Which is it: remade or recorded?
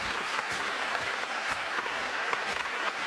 remade